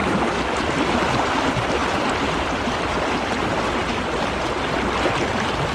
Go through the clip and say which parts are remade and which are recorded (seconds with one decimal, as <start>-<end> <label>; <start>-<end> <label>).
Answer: 0.0-5.7 recorded